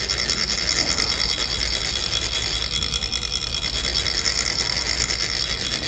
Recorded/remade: recorded